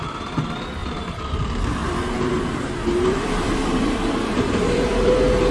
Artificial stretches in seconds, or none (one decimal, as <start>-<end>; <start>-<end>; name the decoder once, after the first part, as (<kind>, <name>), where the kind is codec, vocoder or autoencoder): 0.8-1.3 (vocoder, BigVGAN v2); 1.8-5.1